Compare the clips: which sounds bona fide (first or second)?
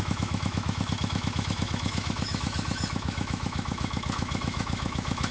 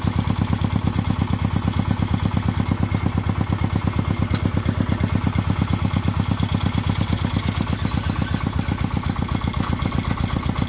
second